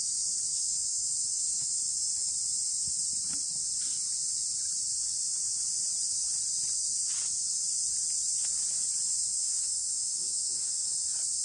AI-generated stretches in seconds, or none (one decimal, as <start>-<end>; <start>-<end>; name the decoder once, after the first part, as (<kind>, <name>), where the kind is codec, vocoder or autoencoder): 0.5-1.8 (autoencoder, DAC-VAE); 9.3-10.9